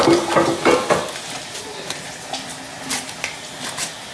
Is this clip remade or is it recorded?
recorded